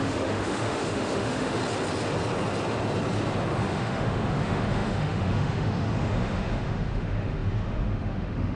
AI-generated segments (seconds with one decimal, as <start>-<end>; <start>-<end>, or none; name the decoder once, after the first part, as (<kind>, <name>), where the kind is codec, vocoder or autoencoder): 0.0-1.6 (autoencoder, DAC-VAE); 3.5-8.6